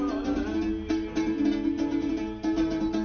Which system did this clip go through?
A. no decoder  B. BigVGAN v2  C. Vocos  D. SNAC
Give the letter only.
A